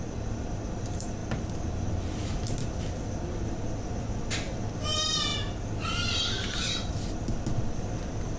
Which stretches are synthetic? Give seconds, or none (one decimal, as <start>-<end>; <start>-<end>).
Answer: none